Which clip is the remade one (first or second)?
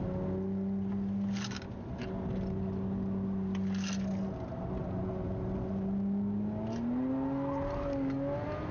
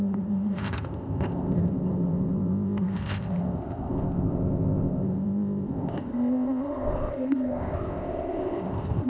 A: second